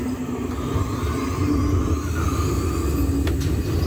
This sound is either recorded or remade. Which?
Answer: recorded